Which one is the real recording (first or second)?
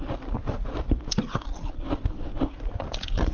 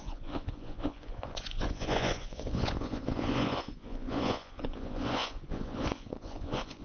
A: first